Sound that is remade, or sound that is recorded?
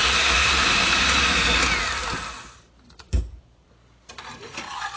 remade